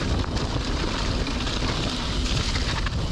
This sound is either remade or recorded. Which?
recorded